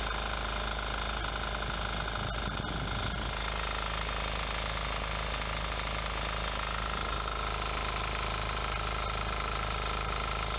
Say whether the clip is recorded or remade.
recorded